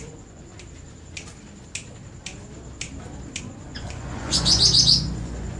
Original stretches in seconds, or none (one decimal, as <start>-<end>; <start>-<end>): 0.5-3.4